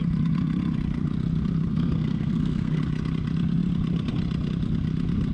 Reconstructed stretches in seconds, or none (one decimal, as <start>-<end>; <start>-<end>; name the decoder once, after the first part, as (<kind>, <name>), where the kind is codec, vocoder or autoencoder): 1.7-2.8 (codec, SNAC)